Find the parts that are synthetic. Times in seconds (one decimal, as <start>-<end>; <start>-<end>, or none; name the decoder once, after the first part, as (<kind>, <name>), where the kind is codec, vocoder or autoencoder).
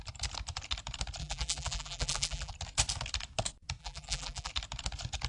1.2-2.5 (vocoder, BigVGAN v2); 3.8-4.5